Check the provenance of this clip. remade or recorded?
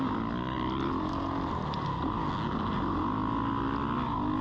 recorded